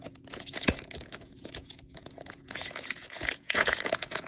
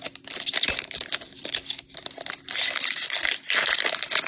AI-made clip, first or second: first